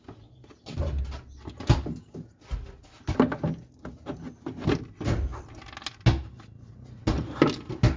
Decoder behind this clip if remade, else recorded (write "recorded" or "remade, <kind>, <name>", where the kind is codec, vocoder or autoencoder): recorded